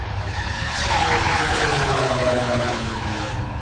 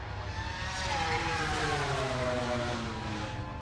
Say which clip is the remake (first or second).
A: first